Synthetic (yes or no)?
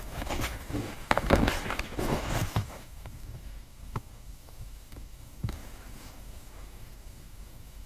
yes